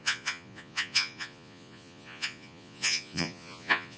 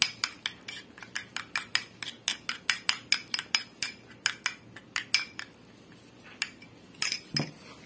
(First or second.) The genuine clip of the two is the second